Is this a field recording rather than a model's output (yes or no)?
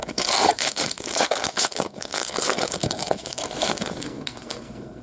no